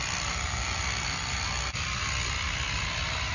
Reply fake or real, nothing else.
real